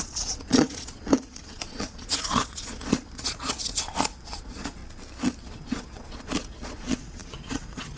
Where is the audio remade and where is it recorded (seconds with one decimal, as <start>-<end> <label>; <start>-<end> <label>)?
0.0-4.8 remade; 4.8-5.4 recorded; 5.4-8.0 remade